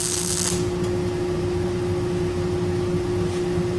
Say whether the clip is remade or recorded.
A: recorded